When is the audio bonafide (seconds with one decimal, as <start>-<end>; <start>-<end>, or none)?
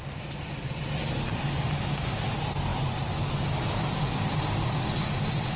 0.0-5.6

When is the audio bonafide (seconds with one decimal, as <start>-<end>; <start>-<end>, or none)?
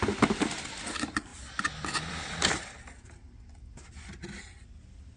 0.0-5.2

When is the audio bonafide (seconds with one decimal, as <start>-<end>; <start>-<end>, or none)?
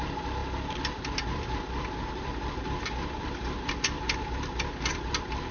0.0-5.5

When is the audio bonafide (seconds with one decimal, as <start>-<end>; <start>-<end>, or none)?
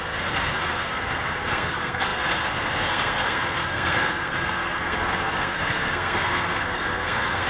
none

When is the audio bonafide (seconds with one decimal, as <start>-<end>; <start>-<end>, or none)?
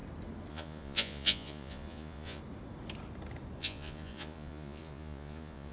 0.0-0.5; 2.4-3.6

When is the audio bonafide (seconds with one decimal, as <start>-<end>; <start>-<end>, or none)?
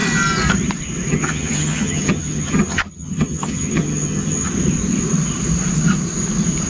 0.0-1.1; 4.5-6.7